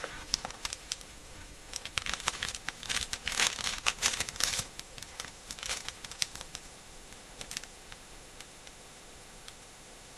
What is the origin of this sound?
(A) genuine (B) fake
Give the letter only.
B